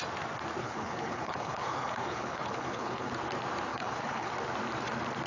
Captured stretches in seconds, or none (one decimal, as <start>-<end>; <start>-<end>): 0.0-0.6; 3.1-3.7; 4.3-5.3